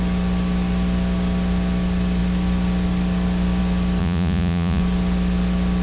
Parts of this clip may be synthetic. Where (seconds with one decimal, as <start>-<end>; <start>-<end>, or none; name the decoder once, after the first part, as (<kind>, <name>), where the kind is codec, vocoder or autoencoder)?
4.0-4.8 (vocoder, Vocos)